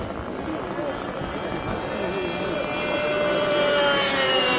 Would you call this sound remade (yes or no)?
no